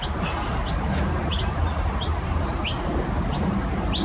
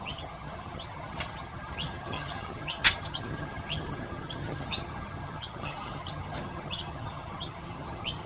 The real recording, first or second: first